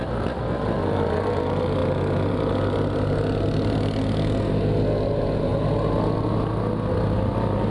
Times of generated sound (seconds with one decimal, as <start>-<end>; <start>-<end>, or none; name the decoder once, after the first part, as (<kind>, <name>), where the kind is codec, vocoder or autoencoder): none